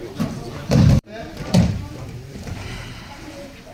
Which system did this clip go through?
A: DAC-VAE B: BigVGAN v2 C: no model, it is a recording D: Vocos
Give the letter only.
B